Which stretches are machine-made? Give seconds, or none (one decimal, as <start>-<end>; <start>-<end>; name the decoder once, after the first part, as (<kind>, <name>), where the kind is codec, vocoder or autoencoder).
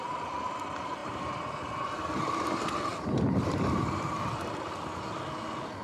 1.0-2.1 (vocoder, BigVGAN v2); 2.9-3.4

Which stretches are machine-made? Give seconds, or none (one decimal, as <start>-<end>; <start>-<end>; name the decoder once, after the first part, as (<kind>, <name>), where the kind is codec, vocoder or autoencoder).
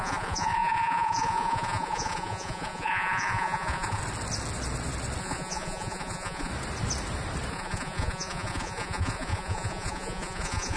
0.0-4.0 (vocoder, Vocos); 5.2-6.5; 7.5-10.8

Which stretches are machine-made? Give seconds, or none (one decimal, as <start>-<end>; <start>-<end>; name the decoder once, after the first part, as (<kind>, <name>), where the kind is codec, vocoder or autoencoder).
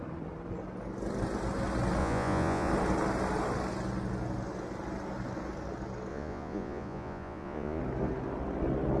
2.0-2.7 (vocoder, Vocos); 6.1-7.8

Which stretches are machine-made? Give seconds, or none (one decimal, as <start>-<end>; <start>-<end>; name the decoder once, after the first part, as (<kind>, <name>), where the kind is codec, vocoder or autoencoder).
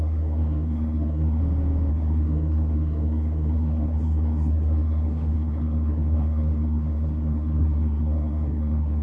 0.0-1.4 (codec, SNAC); 1.9-9.0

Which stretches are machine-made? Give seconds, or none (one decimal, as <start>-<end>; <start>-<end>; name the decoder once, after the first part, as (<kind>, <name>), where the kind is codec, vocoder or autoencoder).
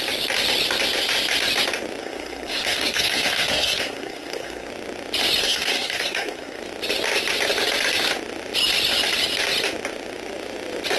2.0-4.7 (codec, SNAC); 5.4-6.6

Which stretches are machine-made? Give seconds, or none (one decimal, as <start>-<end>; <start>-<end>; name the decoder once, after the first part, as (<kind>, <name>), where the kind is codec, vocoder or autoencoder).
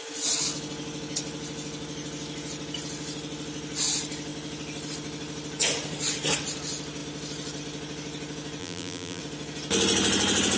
8.6-9.2 (vocoder, BigVGAN v2)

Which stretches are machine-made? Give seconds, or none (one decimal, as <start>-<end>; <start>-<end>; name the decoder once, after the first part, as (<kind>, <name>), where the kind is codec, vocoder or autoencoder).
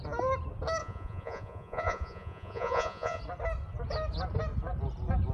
0.8-3.2 (vocoder, Vocos)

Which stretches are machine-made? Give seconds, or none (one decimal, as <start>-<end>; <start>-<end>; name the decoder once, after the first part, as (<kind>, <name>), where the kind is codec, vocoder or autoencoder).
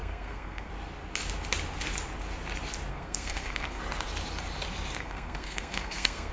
0.0-0.7 (codec, SNAC); 2.9-3.8; 5.0-6.3